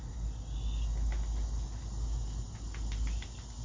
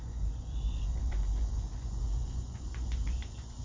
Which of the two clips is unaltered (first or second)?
first